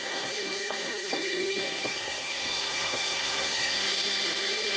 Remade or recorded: remade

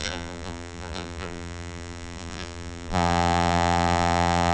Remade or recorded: remade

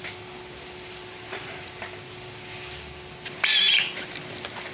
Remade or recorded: recorded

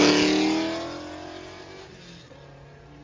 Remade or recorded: recorded